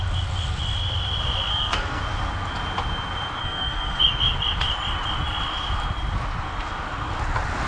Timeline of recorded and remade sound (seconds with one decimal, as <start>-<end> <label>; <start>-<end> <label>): 0.0-1.5 recorded; 1.5-2.0 remade; 2.0-3.4 recorded; 3.4-4.0 remade; 4.0-7.7 recorded